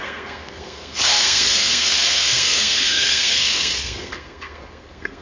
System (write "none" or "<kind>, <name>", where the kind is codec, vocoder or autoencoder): codec, SNAC